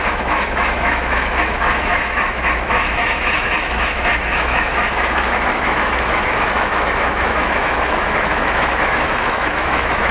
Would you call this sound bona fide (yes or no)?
no